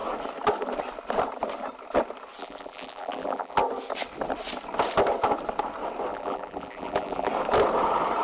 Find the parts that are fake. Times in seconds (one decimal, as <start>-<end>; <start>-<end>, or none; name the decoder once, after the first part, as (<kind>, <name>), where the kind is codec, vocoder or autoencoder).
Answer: 2.4-3.6 (vocoder, BigVGAN v2); 6.1-7.3